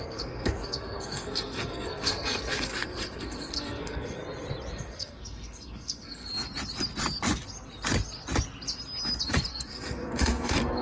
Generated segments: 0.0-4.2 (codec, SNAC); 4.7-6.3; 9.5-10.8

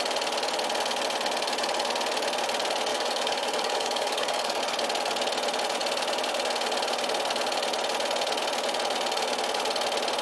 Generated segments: 2.9-4.6 (codec, DAC)

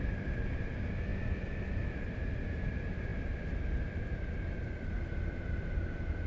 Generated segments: none

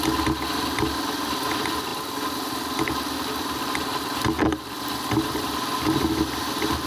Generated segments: none

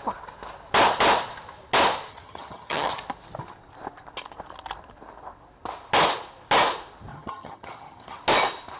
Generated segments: 2.1-3.0 (vocoder, HiFi-GAN); 7.1-8.2

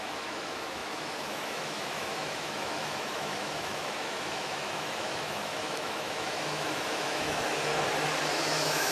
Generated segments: 0.0-7.7 (autoencoder, DAC-VAE); 8.3-8.9

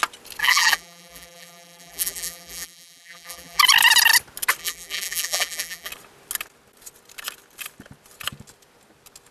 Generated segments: 0.4-3.6 (vocoder, BigVGAN v2); 4.6-5.9

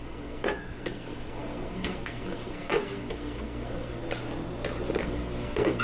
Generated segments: 0.0-4.0 (codec, SNAC); 5.0-5.8